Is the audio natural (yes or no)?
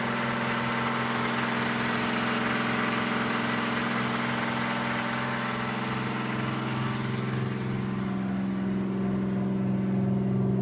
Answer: yes